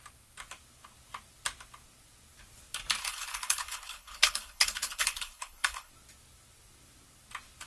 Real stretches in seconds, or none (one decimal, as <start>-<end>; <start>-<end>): 0.0-3.0; 5.9-7.7